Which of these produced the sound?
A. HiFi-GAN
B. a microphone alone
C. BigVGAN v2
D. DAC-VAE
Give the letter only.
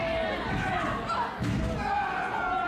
B